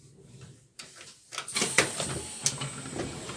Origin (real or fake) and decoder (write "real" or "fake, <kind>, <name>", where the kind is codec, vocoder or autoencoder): real